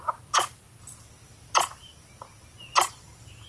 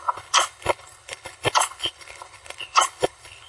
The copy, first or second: second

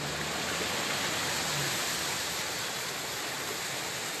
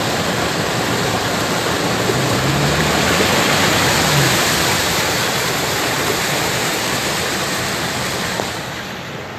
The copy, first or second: second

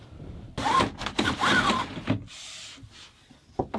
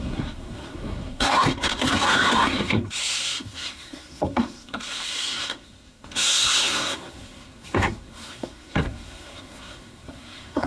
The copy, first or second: second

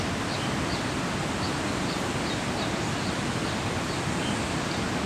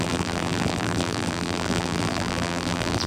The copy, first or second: second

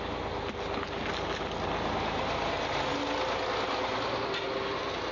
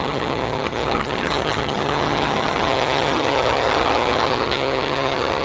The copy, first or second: second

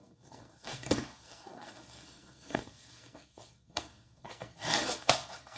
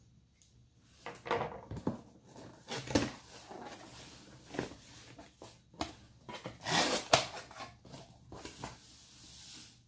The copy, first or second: first